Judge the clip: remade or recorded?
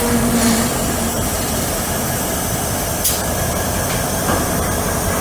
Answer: remade